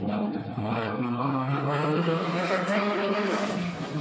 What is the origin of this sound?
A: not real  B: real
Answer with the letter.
A